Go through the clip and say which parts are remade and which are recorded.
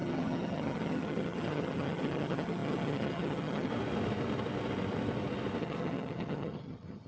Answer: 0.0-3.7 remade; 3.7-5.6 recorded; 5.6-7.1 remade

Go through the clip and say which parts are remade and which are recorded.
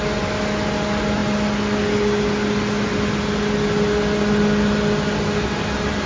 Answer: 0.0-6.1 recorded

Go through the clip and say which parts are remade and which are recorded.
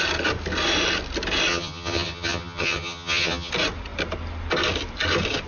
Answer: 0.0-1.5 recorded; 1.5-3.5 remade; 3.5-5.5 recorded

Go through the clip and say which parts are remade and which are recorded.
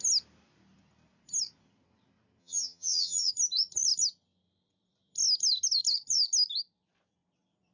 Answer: 0.0-2.4 recorded; 2.4-3.3 remade; 3.3-7.7 recorded